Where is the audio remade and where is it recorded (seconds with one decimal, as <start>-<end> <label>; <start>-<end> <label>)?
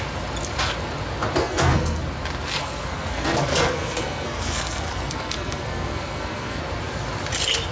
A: 0.0-1.4 recorded; 1.4-2.0 remade; 2.0-2.6 recorded; 2.6-6.6 remade; 6.6-7.7 recorded